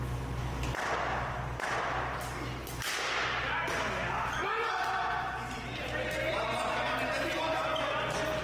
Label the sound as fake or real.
real